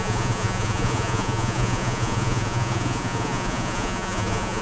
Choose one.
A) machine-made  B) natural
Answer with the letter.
A